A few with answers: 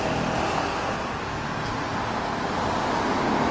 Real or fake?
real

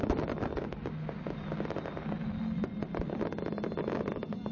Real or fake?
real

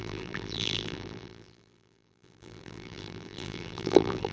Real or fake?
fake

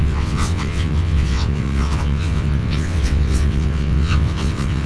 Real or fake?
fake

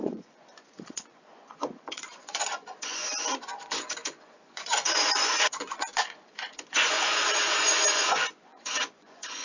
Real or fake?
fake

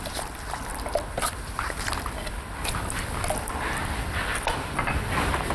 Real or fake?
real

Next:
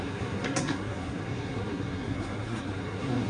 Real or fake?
fake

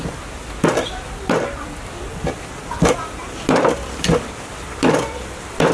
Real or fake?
fake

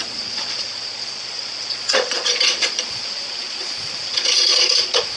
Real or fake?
fake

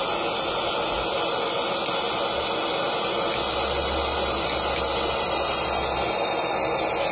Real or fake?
real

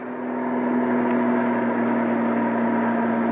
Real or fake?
real